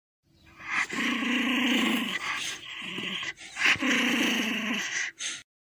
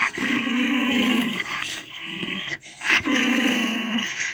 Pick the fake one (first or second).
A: second